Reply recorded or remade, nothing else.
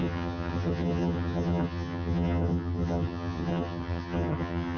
remade